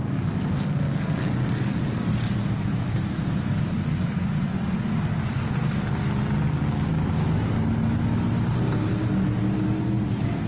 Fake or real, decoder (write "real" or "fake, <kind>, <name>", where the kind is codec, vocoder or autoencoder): real